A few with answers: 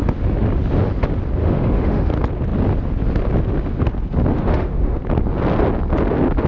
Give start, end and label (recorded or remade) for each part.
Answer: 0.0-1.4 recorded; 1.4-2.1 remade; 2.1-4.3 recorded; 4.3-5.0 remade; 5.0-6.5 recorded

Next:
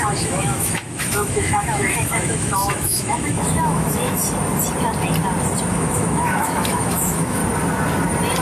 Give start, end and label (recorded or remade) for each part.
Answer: 0.0-4.2 remade; 4.2-5.7 recorded; 5.7-7.4 remade; 7.4-8.4 recorded